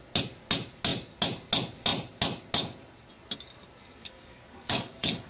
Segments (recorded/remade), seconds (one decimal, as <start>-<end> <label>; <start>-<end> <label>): 0.0-4.0 recorded; 4.0-5.3 remade